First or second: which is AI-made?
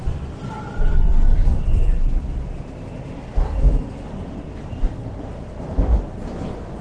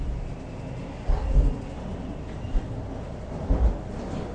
first